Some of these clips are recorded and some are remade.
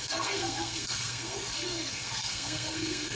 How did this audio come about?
remade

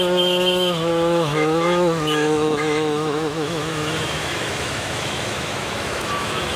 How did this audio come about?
remade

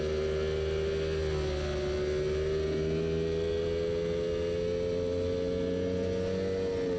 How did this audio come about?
recorded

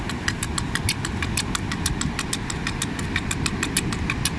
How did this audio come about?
recorded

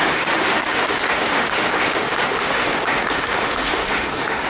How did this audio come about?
remade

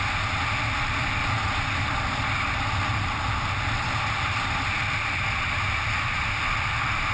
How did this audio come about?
remade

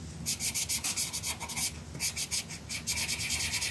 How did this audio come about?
recorded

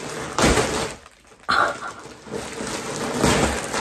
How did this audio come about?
recorded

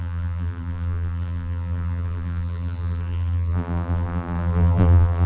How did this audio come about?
remade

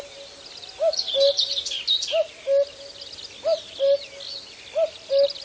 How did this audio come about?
recorded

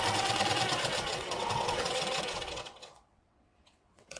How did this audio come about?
remade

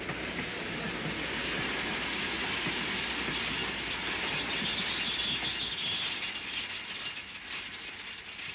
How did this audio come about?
recorded